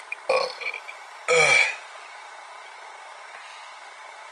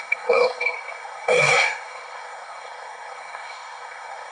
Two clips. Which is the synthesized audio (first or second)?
second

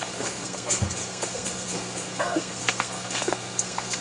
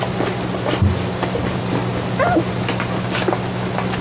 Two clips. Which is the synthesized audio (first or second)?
first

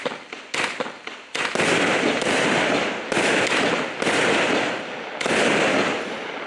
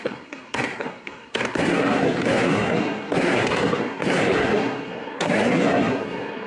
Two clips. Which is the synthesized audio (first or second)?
second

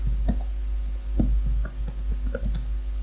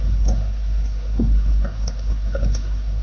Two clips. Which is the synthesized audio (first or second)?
second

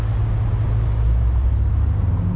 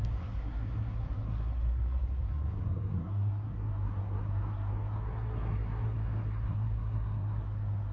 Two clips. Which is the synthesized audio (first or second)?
second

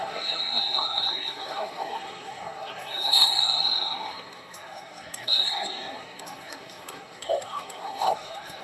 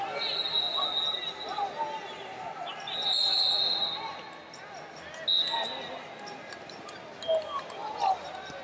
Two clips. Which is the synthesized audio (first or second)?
first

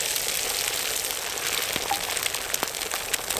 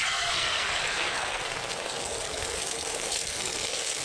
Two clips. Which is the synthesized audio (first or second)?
second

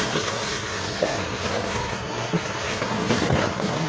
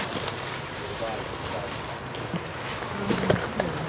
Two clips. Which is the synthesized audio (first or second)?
first